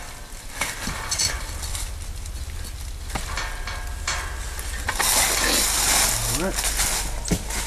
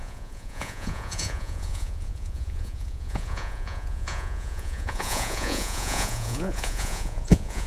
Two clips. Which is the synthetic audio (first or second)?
second